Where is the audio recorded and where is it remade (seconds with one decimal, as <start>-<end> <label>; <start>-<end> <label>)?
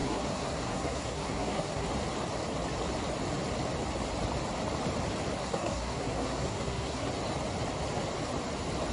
0.0-1.9 remade; 1.9-5.4 recorded; 5.4-7.1 remade; 7.1-8.9 recorded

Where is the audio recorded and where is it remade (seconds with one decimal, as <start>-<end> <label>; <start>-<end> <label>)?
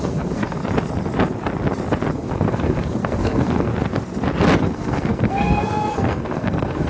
0.0-0.6 remade; 0.6-2.1 recorded; 2.1-3.7 remade; 3.7-4.6 recorded; 4.6-6.9 remade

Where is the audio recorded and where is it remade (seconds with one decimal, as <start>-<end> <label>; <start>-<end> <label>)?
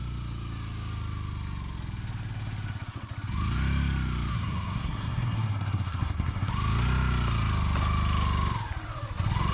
0.0-4.3 recorded; 4.3-6.5 remade; 6.5-9.5 recorded